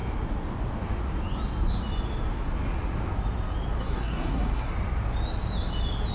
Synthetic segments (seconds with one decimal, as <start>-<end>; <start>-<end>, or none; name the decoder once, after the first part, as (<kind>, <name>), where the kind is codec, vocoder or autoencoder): 3.8-4.7 (codec, SNAC)